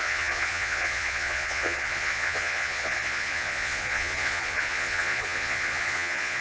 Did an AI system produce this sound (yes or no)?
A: yes